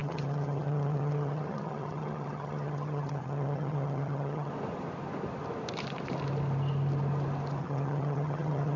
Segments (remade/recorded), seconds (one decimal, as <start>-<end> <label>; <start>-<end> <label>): 0.0-4.5 remade; 4.5-7.6 recorded; 7.6-8.8 remade